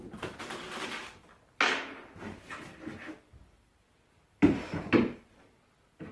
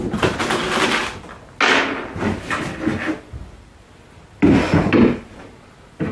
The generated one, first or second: first